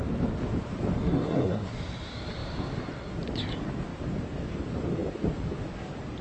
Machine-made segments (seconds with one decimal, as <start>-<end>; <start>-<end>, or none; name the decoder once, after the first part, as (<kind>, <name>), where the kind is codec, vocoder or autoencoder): 1.0-1.7 (codec, SNAC)